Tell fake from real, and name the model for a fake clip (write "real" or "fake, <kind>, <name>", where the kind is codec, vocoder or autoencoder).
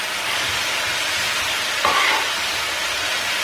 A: real